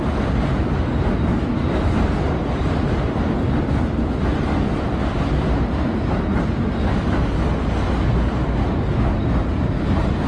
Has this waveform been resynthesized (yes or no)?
no